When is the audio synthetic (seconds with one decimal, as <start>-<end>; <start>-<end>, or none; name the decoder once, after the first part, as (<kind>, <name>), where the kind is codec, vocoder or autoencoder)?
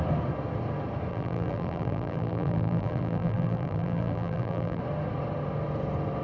1.1-4.8 (vocoder, BigVGAN v2)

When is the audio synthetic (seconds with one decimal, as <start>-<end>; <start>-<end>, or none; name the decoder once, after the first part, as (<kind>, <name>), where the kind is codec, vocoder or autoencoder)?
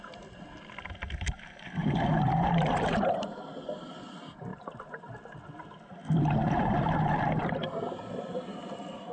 1.8-3.4 (vocoder, BigVGAN v2); 4.5-5.1; 6.4-7.4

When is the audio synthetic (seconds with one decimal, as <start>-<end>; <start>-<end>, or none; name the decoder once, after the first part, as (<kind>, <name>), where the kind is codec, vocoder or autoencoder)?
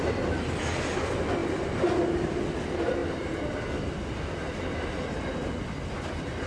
none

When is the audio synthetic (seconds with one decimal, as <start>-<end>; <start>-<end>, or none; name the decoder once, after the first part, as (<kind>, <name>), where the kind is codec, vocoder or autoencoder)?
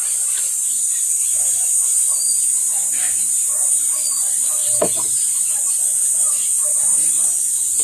4.6-5.8 (vocoder, BigVGAN v2)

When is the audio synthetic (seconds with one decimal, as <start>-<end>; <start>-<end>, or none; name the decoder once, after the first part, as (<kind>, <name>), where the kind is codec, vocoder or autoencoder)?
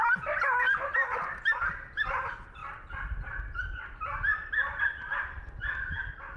none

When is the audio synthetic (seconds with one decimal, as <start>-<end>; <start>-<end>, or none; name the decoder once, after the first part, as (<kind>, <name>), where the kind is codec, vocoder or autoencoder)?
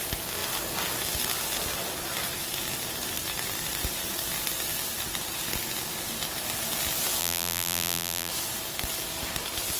7.2-8.3 (vocoder, BigVGAN v2)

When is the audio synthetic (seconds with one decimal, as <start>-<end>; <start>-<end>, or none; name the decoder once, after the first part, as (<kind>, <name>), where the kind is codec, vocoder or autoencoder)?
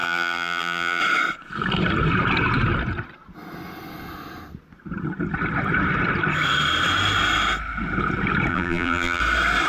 0.0-1.0 (vocoder, BigVGAN v2); 8.5-9.2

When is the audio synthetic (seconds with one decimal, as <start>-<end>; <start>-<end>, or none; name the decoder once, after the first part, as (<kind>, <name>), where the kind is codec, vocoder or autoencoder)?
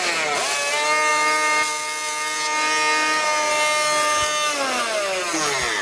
none